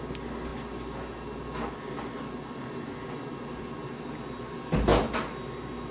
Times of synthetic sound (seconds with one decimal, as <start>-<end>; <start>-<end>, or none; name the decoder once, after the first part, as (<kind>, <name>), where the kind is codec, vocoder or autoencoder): none

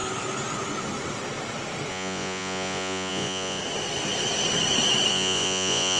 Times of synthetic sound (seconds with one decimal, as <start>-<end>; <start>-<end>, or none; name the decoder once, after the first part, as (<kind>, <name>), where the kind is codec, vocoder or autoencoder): 1.9-3.6 (vocoder, Vocos); 5.1-6.0

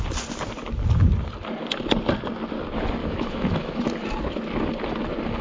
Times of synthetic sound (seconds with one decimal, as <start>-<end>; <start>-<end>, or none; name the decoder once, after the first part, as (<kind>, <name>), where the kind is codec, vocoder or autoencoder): 3.0-3.8 (autoencoder, DAC-VAE)

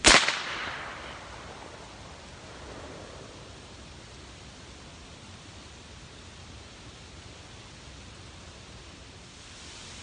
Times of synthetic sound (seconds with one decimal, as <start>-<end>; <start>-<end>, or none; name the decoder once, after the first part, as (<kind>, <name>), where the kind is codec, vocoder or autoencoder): none

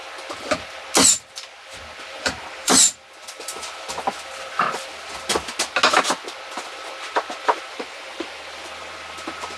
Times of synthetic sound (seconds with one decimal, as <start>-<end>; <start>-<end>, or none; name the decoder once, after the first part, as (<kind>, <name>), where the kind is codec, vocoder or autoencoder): 2.0-2.8 (vocoder, BigVGAN v2); 7.4-9.6

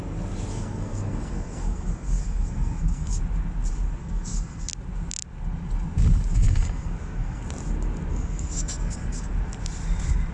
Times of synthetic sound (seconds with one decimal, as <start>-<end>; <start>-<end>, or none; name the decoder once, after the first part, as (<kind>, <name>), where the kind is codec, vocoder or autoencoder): 0.5-3.2 (codec, SNAC); 4.0-4.7; 6.3-7.4; 8.1-9.3